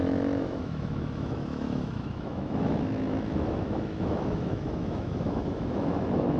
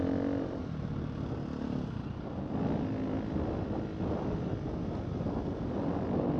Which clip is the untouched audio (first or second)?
second